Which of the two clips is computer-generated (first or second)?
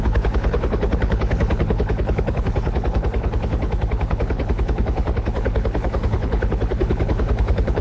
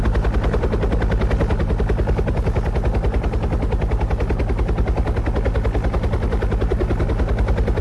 first